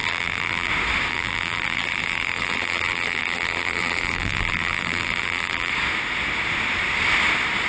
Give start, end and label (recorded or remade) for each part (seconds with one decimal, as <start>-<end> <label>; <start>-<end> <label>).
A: 0.0-0.7 remade; 0.7-1.1 recorded; 1.1-5.7 remade; 5.7-7.7 recorded

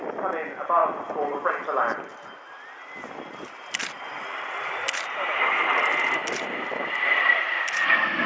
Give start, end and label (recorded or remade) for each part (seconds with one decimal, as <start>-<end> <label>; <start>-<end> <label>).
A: 0.0-0.8 recorded; 0.8-1.5 remade; 1.5-6.2 recorded; 6.2-7.8 remade; 7.8-8.3 recorded

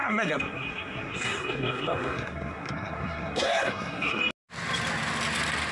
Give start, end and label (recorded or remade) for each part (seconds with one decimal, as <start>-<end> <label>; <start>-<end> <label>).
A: 0.0-4.2 remade; 4.2-5.7 recorded

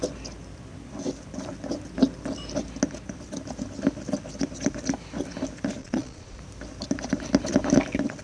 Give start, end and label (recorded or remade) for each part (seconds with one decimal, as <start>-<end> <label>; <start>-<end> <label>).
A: 0.0-5.8 recorded; 5.8-6.4 remade; 6.4-8.2 recorded